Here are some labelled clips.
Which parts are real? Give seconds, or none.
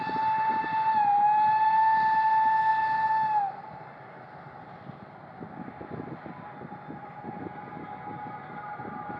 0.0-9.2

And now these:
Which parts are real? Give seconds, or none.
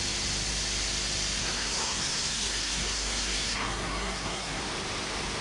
0.0-1.4; 4.6-5.4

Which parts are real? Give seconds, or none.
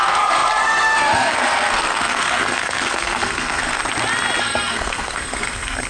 3.8-4.4